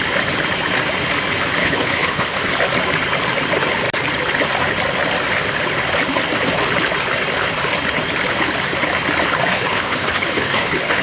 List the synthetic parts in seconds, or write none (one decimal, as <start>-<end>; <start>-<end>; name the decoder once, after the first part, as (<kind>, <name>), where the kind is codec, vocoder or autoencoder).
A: 1.6-2.5 (codec, HILCodec); 9.5-11.0